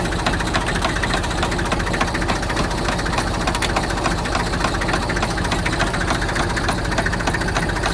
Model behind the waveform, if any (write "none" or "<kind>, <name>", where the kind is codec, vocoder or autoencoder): none